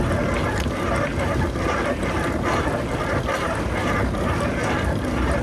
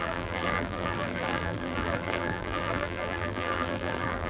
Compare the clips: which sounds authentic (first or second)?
first